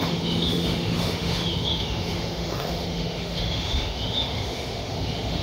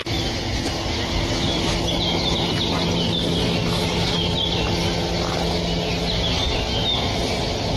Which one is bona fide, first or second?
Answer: second